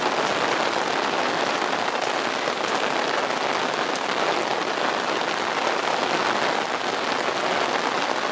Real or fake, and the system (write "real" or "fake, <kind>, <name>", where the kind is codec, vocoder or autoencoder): real